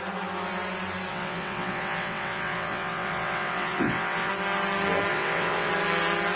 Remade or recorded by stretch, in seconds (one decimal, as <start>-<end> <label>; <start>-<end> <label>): 0.0-1.1 recorded; 1.1-4.3 remade; 4.3-5.1 recorded; 5.1-5.7 remade; 5.7-6.4 recorded